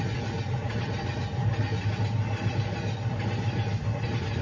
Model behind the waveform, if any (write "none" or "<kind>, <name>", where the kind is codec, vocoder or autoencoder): none